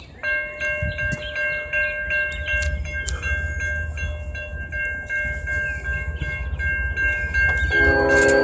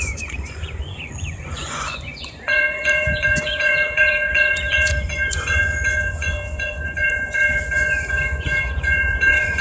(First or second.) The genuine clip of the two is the first